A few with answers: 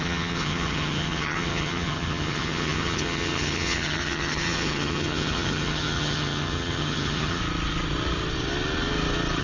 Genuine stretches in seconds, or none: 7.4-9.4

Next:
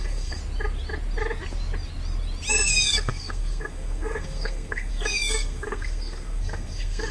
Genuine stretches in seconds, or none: 0.4-2.5

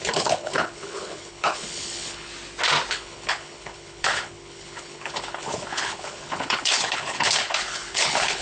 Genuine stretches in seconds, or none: 2.3-2.9

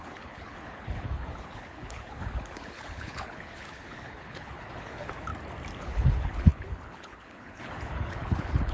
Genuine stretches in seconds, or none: 5.3-5.8

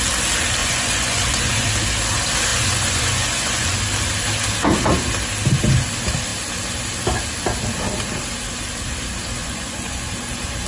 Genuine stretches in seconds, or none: 0.0-0.6; 1.7-2.5; 3.8-9.4; 10.1-10.7

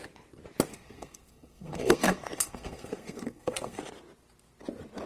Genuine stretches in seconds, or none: 0.0-0.7; 3.8-5.1

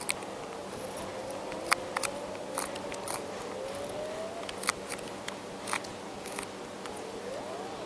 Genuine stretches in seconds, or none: 0.0-7.9

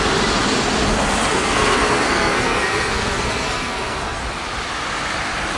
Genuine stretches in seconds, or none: 0.0-1.3; 4.2-5.6